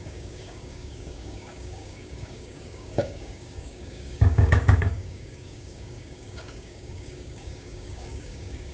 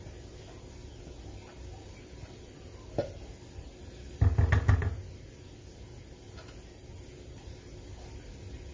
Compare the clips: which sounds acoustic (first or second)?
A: second